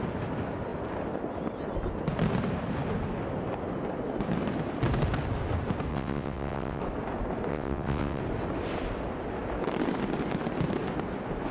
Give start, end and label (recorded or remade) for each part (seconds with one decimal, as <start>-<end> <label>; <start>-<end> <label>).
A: 0.0-5.9 recorded; 5.9-6.8 remade; 6.8-7.5 recorded; 7.5-8.2 remade; 8.2-11.5 recorded